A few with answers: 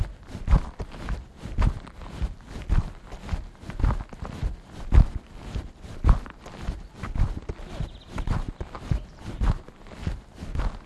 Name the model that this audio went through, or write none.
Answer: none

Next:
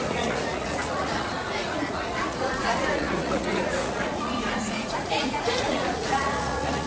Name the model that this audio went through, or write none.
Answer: vocoder, Vocos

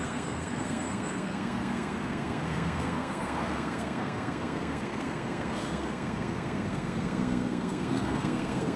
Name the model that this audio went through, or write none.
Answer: codec, SNAC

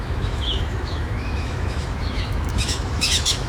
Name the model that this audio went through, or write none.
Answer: autoencoder, DAC-VAE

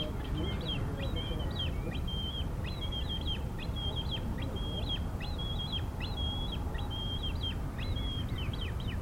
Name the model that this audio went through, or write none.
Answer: none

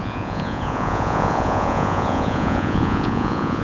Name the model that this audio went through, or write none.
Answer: vocoder, Vocos